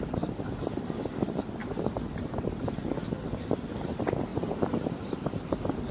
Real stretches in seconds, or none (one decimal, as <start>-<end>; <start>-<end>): 0.0-1.6; 2.5-5.9